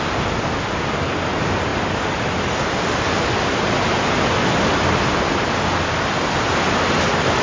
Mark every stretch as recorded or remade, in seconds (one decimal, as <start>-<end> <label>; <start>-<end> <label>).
0.0-7.4 recorded